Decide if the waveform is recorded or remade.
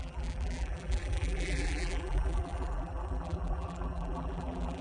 remade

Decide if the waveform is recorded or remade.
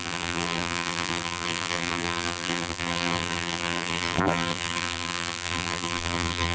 remade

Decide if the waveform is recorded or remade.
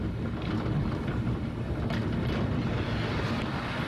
recorded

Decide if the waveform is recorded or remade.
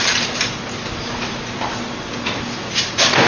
recorded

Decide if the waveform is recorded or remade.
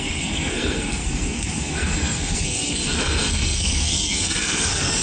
remade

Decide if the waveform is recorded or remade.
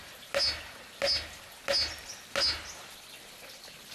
recorded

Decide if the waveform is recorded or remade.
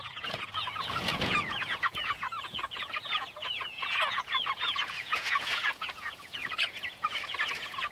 remade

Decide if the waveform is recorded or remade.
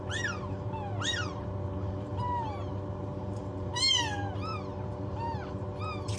remade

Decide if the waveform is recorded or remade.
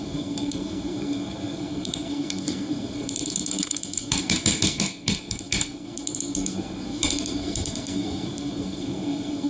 remade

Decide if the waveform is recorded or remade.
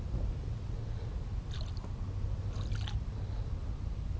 recorded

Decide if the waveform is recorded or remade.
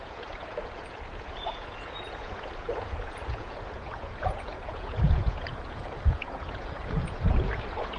remade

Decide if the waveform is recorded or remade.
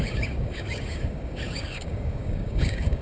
remade